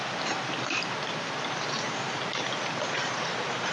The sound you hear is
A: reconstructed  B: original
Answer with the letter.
A